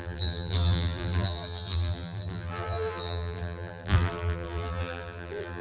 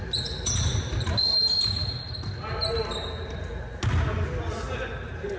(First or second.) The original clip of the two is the second